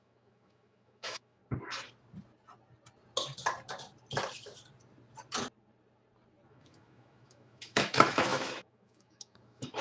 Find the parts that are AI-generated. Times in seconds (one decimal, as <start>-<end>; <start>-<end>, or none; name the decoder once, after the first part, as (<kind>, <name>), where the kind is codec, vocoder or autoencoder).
0.0-1.4 (autoencoder, DAC-VAE); 6.5-9.8